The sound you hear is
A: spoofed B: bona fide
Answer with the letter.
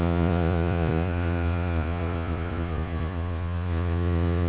A